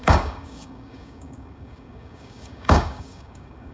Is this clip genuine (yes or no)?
no